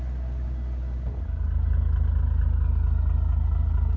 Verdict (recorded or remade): recorded